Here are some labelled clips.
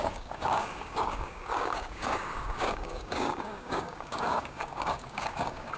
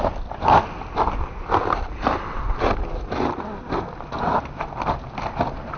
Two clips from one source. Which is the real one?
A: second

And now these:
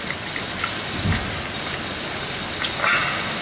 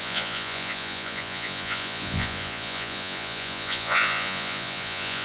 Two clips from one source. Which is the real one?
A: first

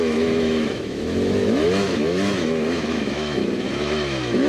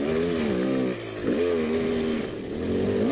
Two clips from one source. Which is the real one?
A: second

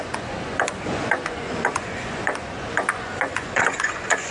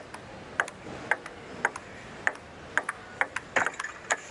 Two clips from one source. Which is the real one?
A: second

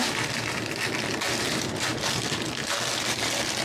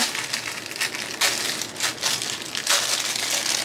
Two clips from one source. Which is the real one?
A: second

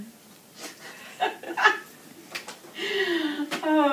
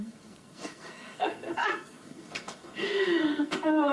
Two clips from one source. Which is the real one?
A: first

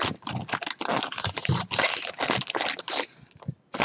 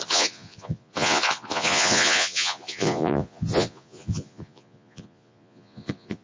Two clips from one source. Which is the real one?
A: first